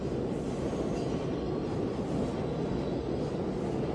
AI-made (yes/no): no